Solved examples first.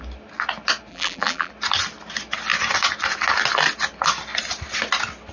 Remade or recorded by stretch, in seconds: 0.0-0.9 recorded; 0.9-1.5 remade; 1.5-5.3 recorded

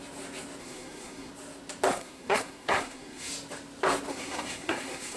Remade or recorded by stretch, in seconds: 0.0-0.6 recorded; 0.6-1.3 remade; 1.3-1.9 recorded; 1.9-3.3 remade; 3.3-4.1 recorded; 4.1-5.2 remade

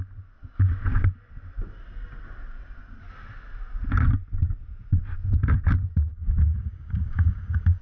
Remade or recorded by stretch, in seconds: 0.0-6.1 recorded; 6.1-7.8 remade

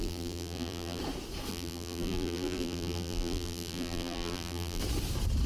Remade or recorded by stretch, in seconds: 0.0-1.0 remade; 1.0-1.5 recorded; 1.5-4.8 remade; 4.8-5.5 recorded

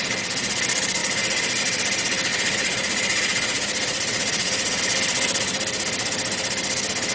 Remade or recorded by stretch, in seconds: 0.0-2.3 recorded; 2.3-4.8 remade; 4.8-7.1 recorded

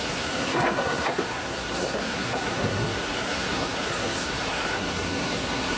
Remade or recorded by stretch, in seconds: 0.0-5.8 remade